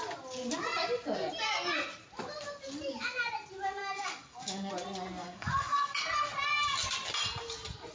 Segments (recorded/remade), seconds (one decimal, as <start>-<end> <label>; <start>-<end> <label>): 0.0-3.8 recorded; 3.8-4.7 remade; 4.7-5.2 recorded; 5.2-6.0 remade; 6.0-7.9 recorded